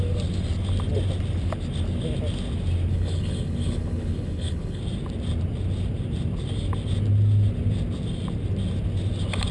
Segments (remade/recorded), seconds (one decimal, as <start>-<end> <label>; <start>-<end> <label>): 0.0-2.9 recorded; 2.9-4.8 remade; 4.8-9.5 recorded